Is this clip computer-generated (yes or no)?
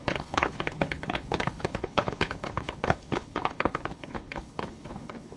yes